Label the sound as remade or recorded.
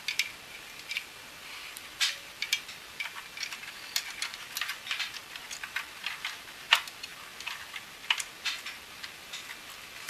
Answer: remade